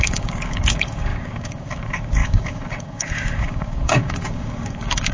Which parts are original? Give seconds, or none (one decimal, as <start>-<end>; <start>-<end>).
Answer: none